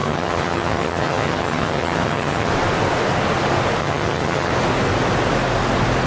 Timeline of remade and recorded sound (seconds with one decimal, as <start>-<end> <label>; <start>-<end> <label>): 0.0-2.5 remade; 2.5-3.8 recorded; 3.8-4.5 remade; 4.5-6.1 recorded